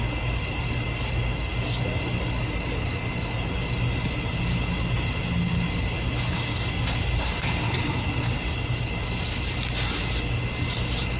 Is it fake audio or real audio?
real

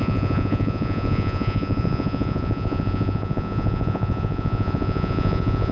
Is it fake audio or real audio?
fake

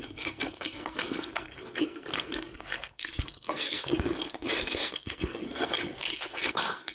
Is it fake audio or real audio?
fake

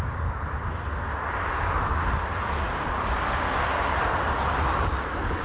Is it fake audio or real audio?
real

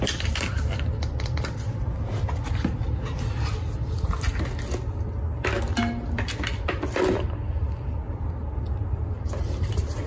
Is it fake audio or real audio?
real